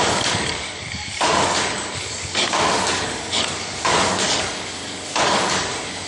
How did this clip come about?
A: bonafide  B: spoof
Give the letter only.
B